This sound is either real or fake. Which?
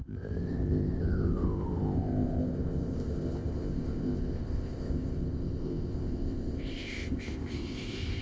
fake